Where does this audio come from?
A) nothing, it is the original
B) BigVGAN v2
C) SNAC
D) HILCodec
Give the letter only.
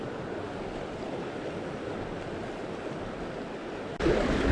A